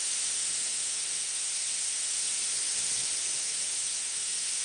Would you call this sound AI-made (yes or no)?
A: yes